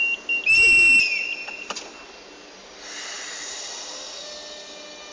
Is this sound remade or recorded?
recorded